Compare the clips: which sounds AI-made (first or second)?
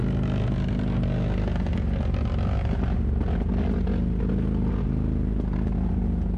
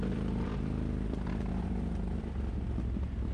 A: second